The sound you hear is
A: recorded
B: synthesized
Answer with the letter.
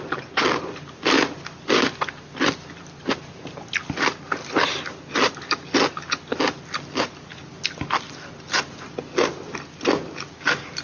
A